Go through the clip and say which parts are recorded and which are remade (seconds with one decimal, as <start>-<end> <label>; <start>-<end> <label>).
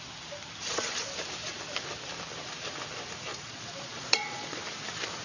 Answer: 0.0-3.3 recorded; 3.3-4.6 remade; 4.6-5.2 recorded